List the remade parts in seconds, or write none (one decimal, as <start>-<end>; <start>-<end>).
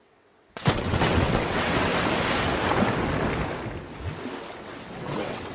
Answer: 0.0-1.9; 4.6-5.5